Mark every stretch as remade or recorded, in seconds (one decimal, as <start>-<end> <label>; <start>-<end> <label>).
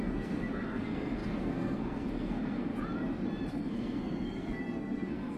0.0-2.7 remade; 2.7-3.5 recorded; 3.5-5.4 remade